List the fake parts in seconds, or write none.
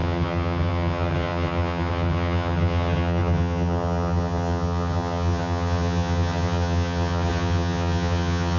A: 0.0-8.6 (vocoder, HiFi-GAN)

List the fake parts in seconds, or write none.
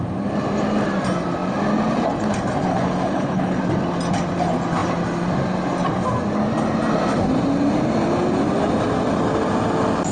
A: 2.7-3.6 (codec, HILCodec)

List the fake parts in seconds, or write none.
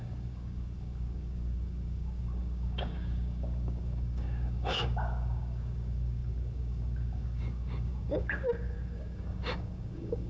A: 0.0-10.3 (codec, DAC)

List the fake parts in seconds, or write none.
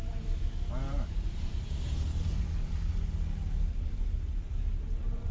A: 0.8-2.5 (vocoder, BigVGAN v2)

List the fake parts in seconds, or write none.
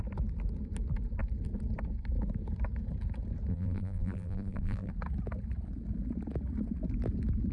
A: 3.5-4.9 (vocoder, BigVGAN v2)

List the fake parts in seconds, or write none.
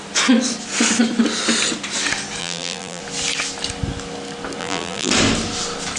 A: 2.4-3.0 (vocoder, BigVGAN v2); 4.6-5.1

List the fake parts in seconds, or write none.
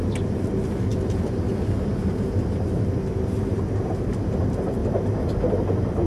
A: none